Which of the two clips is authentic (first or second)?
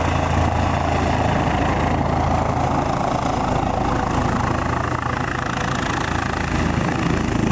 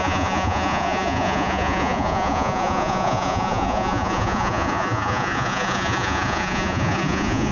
first